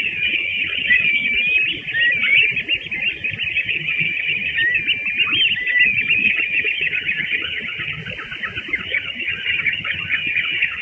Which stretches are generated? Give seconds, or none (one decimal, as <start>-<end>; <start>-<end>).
0.0-1.3; 3.5-4.6; 6.2-8.0; 8.8-10.8